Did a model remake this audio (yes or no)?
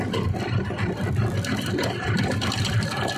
yes